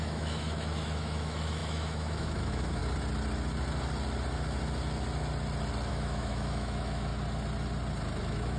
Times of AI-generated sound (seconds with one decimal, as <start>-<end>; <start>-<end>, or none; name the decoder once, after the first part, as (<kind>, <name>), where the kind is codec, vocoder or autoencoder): 0.0-2.8 (autoencoder, DAC-VAE); 5.9-7.1; 8.2-8.6